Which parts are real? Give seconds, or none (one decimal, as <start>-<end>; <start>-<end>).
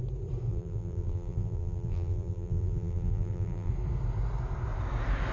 0.0-0.5; 3.7-5.3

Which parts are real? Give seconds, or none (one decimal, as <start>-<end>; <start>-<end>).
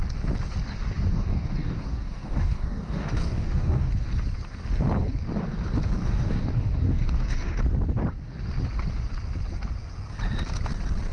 0.0-1.1; 3.9-6.0; 7.6-11.1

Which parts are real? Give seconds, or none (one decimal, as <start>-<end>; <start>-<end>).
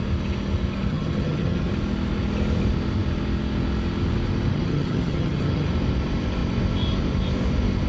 0.0-0.9; 1.7-4.5; 5.7-7.9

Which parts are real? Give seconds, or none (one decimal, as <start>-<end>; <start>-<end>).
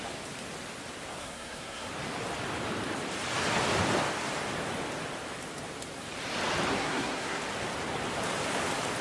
0.0-1.2; 1.9-6.7; 7.4-9.0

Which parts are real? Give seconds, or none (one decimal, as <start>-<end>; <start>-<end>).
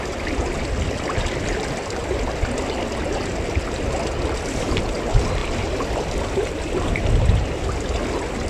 0.0-5.4; 7.1-8.5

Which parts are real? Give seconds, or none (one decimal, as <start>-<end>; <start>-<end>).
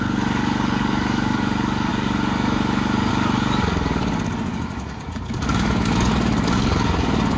none